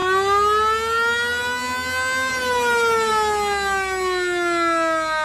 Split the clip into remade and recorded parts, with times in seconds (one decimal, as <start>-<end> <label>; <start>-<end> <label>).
0.0-5.2 recorded